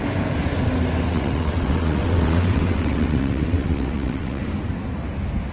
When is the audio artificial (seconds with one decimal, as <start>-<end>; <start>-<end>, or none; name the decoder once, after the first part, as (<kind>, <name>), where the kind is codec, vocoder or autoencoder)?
1.1-4.4 (vocoder, WaveNeXt)